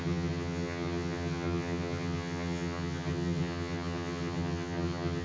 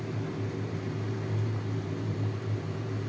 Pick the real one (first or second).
second